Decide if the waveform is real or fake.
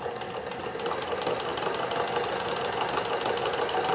real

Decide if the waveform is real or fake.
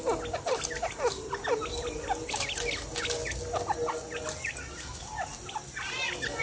real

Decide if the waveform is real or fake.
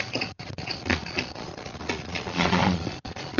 fake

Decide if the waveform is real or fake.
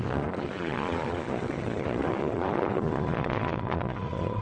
fake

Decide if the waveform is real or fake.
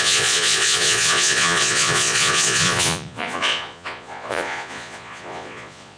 fake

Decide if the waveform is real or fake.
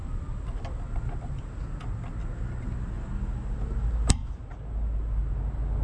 real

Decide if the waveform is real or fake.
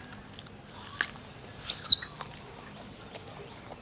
real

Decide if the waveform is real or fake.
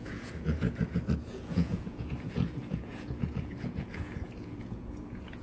fake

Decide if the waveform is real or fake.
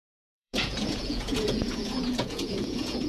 fake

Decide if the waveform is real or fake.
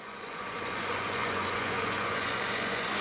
fake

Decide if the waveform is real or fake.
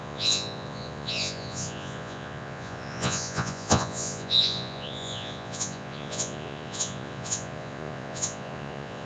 fake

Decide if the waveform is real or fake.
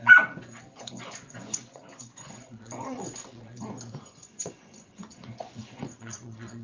fake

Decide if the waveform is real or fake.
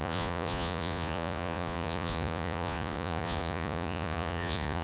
fake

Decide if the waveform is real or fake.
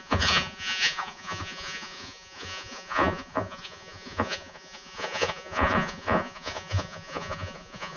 fake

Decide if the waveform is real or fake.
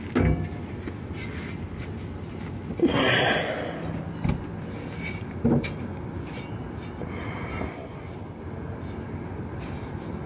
real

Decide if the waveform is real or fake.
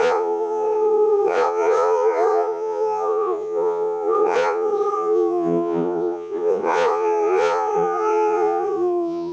fake